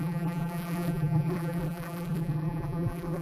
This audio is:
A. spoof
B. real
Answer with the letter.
A